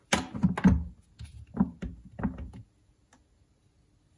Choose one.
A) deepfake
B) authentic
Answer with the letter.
B